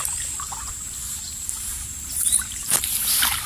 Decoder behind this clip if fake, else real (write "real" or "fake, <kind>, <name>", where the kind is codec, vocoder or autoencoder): fake, vocoder, BigVGAN v2